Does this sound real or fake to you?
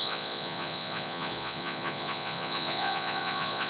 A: fake